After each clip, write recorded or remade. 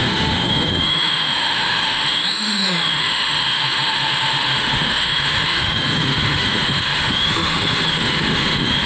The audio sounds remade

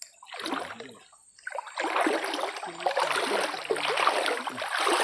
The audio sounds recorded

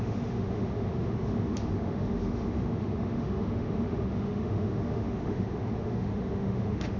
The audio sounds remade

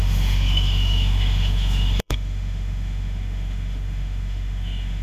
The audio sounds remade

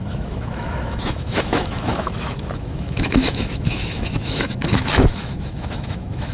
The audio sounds remade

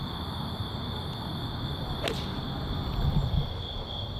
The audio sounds recorded